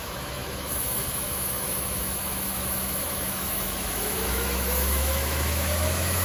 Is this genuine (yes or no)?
no